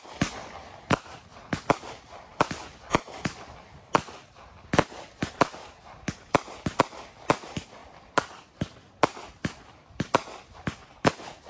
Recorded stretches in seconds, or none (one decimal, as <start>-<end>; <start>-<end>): 0.0-5.6; 6.1-7.8; 8.9-11.5

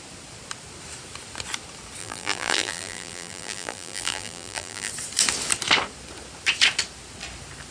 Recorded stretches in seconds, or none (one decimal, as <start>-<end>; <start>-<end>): 0.0-2.0; 4.9-7.7

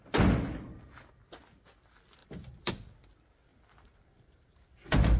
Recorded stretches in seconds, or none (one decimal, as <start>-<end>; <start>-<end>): 0.0-2.2; 2.7-3.5

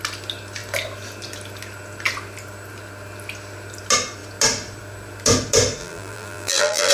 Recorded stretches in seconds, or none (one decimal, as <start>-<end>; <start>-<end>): 0.0-5.8

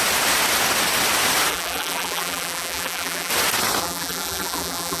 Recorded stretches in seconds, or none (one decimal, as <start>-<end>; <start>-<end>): 0.0-1.5; 3.3-3.8